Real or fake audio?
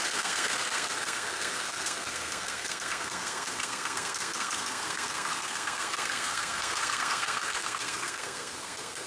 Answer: fake